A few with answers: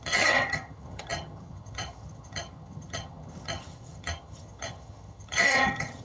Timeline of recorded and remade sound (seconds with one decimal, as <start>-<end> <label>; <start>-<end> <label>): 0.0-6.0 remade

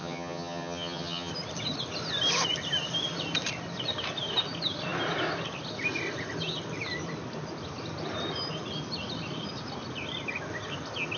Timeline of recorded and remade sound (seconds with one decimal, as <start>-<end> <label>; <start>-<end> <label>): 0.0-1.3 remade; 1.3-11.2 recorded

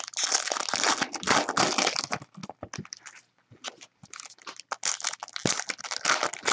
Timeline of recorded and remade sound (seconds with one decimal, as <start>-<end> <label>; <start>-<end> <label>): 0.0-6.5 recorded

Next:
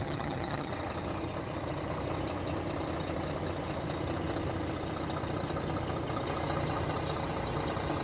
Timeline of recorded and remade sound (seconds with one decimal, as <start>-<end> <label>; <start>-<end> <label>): 0.0-0.7 remade; 0.7-8.0 recorded

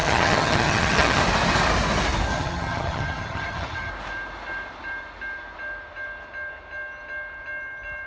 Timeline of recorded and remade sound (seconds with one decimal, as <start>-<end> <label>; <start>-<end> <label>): 0.0-1.2 remade; 1.2-2.3 recorded; 2.3-3.9 remade; 3.9-8.1 recorded

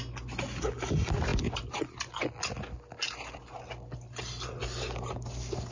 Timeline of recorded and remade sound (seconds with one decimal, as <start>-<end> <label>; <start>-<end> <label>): 0.0-5.7 recorded